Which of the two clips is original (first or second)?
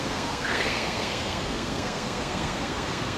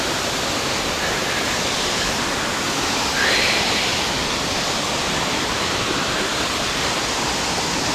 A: second